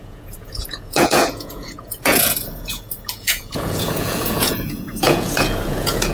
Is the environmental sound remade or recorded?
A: remade